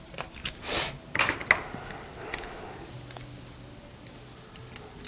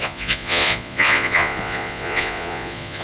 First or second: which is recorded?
first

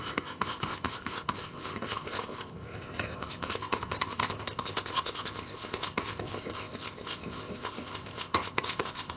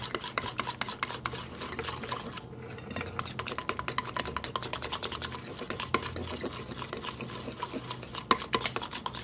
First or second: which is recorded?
second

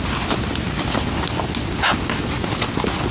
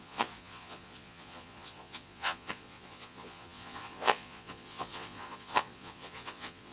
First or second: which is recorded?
first